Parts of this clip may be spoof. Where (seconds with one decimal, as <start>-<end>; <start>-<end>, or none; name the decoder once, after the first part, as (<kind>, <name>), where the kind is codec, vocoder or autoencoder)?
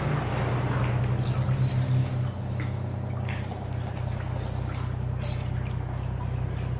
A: none